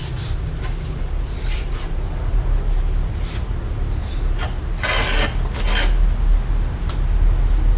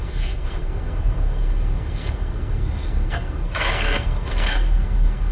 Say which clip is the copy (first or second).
second